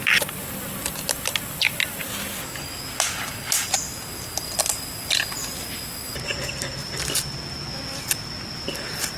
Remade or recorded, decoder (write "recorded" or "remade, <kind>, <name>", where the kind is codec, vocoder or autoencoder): recorded